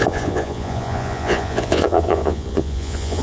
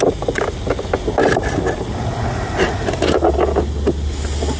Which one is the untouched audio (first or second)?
second